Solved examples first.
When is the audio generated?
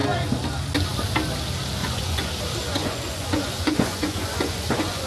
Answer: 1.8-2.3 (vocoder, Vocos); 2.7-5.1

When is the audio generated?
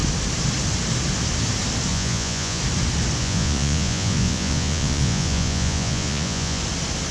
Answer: 1.9-2.6 (vocoder, Vocos); 3.2-6.6